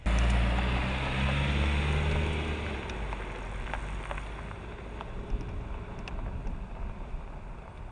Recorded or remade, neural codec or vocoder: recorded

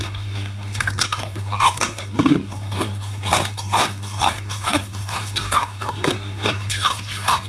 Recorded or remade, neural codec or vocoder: remade, codec, SNAC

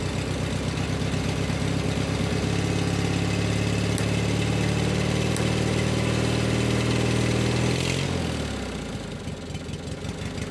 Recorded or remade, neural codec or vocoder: recorded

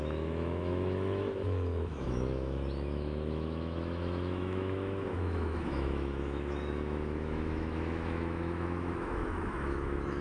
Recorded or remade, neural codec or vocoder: remade, autoencoder, DAC-VAE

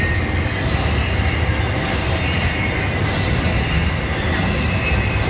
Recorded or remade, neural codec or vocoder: recorded